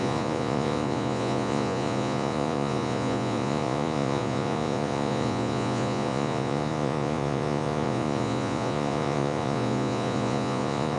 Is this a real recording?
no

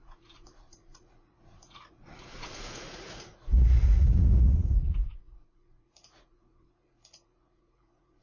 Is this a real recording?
no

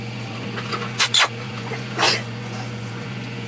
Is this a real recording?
no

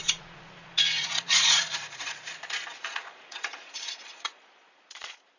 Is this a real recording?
no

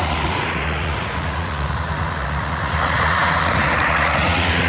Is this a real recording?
no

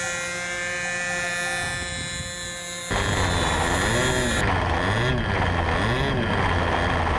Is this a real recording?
yes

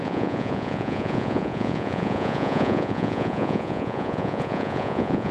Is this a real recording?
no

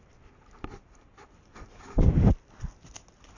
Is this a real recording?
yes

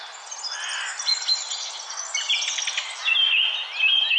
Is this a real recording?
yes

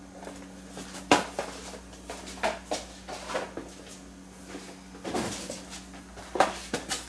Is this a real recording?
yes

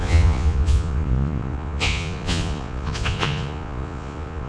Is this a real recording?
no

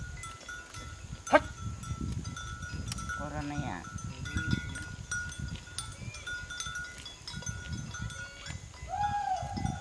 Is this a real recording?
yes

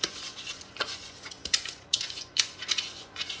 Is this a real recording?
no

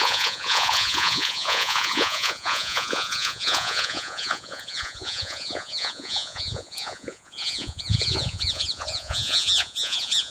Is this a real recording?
no